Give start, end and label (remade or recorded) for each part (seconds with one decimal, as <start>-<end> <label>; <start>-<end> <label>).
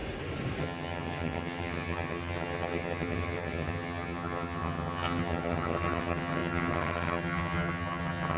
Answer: 0.0-0.6 recorded; 0.6-8.4 remade